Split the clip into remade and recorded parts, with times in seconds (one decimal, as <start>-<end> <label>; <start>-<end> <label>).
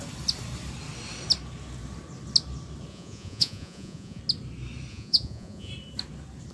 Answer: 0.0-2.9 recorded; 2.9-4.2 remade; 4.2-4.9 recorded; 4.9-5.7 remade; 5.7-6.5 recorded